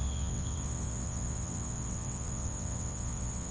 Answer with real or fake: fake